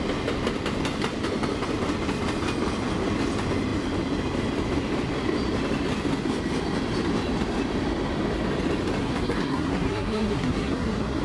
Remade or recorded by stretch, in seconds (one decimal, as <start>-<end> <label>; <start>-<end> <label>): 0.0-9.0 recorded; 9.0-11.2 remade